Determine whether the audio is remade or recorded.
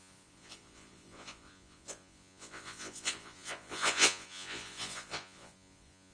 remade